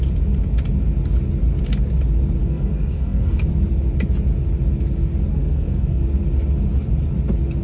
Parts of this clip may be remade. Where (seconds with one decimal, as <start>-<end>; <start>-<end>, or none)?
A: 2.4-3.5; 5.3-6.0

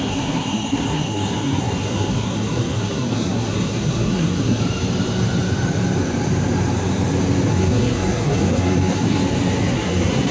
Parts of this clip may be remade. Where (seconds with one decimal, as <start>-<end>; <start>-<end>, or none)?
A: 0.0-4.6; 7.5-9.2; 9.7-10.3

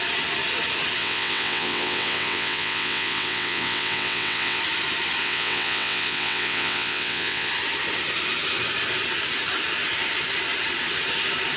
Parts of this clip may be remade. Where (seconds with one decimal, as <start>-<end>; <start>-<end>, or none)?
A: 1.0-4.6; 5.2-7.5

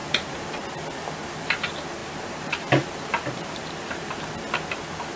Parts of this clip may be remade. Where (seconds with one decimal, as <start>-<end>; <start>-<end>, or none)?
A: 0.0-0.6; 2.0-4.2

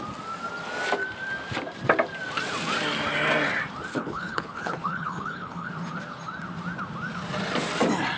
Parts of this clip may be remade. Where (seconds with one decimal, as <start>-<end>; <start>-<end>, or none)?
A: 3.9-5.7

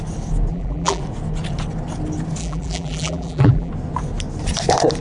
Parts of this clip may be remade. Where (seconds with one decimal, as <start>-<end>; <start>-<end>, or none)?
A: 0.5-1.0; 2.4-3.7

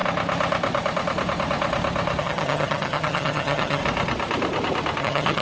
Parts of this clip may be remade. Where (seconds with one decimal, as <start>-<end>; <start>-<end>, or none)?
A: 2.2-3.8; 5.0-5.4